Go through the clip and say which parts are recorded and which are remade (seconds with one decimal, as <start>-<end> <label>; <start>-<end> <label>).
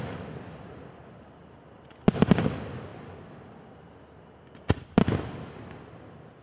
0.0-6.4 recorded